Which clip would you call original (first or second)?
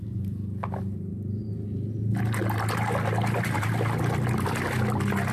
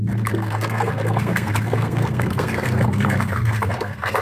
first